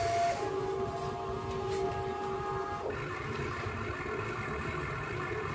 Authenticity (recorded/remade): recorded